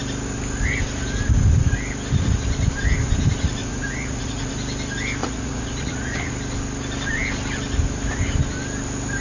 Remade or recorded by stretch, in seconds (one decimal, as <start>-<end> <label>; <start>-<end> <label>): 0.0-3.6 recorded; 3.6-4.5 remade; 4.5-5.2 recorded; 5.2-6.3 remade; 6.3-9.2 recorded